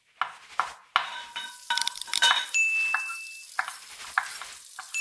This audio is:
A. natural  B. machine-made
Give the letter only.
A